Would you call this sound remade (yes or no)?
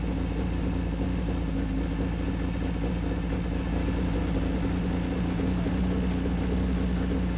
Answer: no